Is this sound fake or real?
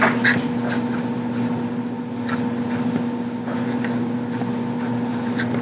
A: real